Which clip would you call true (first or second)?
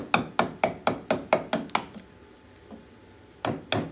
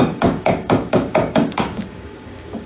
first